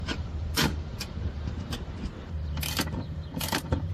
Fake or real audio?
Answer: fake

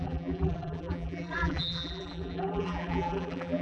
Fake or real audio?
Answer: fake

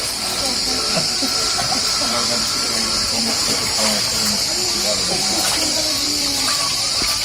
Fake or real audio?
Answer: fake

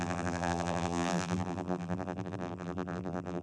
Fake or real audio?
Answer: fake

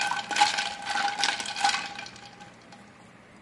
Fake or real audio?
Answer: real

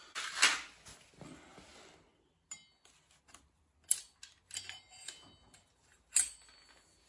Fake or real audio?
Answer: real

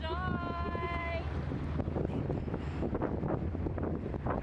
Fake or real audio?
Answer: real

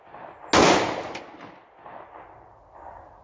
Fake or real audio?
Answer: real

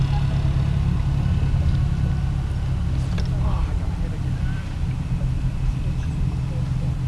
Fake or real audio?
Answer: real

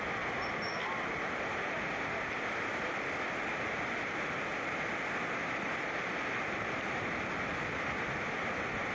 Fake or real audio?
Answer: real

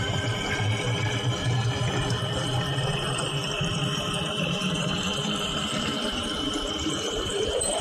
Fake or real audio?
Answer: fake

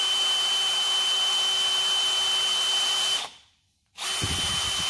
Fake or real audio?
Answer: real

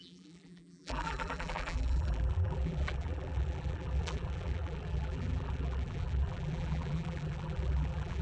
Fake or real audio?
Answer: fake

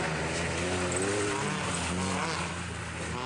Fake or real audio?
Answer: real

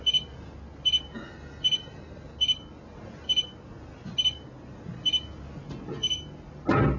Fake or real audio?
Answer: real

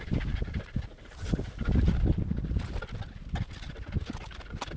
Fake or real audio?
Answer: real